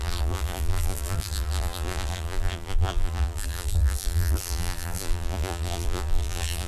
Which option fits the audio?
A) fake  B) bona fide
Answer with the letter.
A